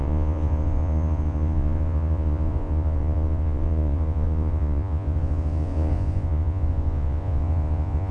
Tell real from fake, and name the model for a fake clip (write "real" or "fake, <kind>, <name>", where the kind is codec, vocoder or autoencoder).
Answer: fake, vocoder, Vocos